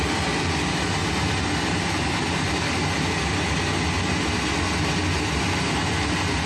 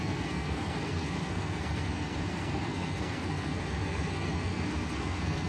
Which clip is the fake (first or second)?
second